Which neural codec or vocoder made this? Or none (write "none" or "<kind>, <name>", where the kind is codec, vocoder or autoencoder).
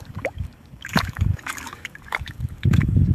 codec, DAC